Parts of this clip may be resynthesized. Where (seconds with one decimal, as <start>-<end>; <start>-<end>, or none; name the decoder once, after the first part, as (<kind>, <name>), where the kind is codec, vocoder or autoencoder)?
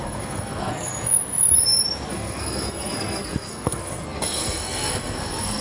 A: 0.0-0.9 (codec, SNAC); 2.1-5.6